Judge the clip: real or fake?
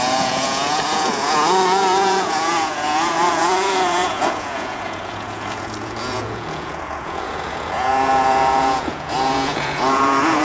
fake